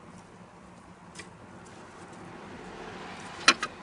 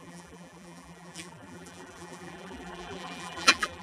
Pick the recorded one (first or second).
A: first